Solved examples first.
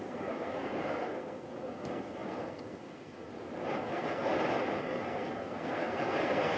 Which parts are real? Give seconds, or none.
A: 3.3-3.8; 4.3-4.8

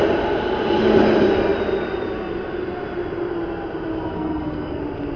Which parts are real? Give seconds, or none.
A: 0.0-4.1; 4.8-5.2

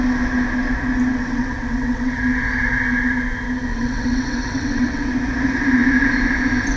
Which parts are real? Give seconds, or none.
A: 0.0-1.1; 2.2-3.7; 5.1-6.8

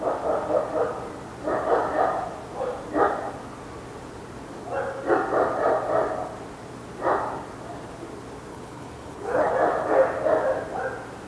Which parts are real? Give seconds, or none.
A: 0.0-8.5; 9.5-11.3

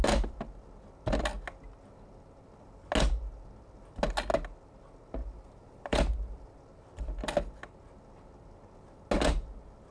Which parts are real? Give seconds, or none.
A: 0.0-5.2; 6.6-9.9

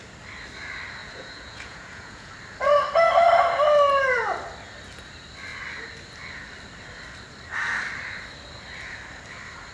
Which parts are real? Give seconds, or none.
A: 0.0-1.0; 2.3-9.7

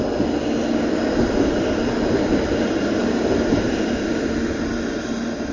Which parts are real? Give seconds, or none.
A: 0.0-3.0; 3.9-5.5